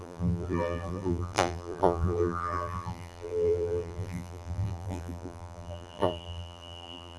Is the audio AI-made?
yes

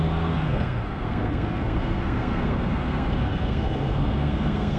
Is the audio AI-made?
yes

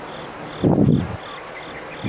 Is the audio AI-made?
no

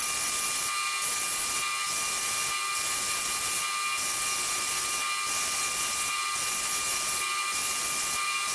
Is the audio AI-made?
no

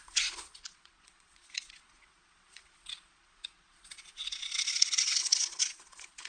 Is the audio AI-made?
yes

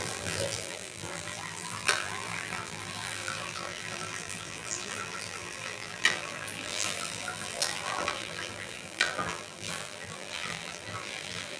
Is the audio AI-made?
yes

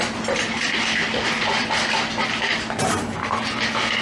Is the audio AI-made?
no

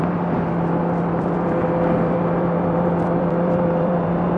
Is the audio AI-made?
yes